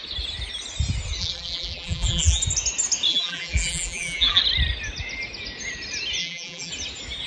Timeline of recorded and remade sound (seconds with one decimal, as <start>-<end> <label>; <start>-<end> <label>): 0.0-1.2 recorded; 1.2-2.4 remade; 2.4-3.1 recorded; 3.1-4.4 remade; 4.4-6.2 recorded; 6.2-6.7 remade; 6.7-7.3 recorded